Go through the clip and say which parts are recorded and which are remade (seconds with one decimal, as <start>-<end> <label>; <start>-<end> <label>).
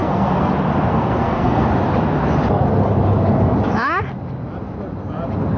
0.0-0.5 remade; 0.5-0.9 recorded; 0.9-1.7 remade; 1.7-5.6 recorded